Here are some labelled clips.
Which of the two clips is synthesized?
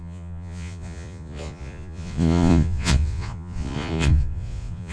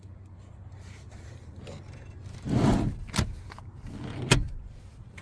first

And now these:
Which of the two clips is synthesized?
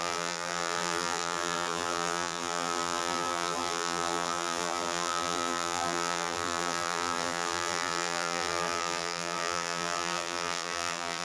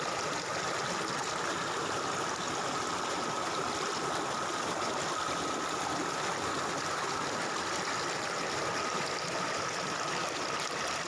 first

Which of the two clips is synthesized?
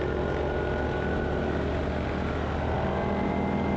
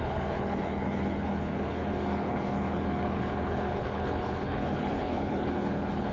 second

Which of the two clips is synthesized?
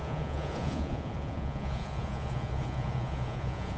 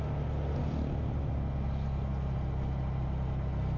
first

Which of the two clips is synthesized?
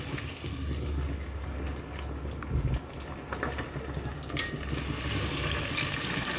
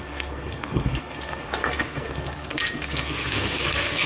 second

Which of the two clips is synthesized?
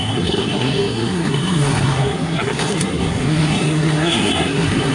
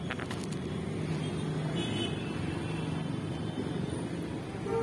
first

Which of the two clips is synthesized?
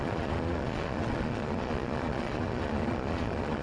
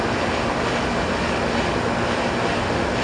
first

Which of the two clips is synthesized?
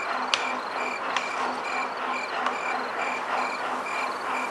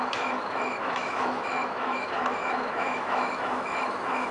second